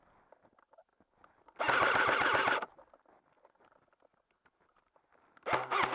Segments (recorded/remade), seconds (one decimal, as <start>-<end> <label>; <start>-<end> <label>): 0.0-5.9 recorded